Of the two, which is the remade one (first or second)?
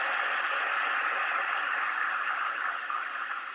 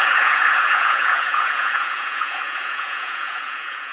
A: second